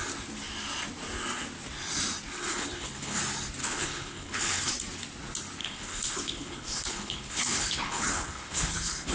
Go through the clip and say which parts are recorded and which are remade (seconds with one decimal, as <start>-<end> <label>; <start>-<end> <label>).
0.0-2.5 recorded; 2.5-3.2 remade; 3.2-3.6 recorded; 3.6-4.7 remade; 4.7-5.6 recorded; 5.6-9.1 remade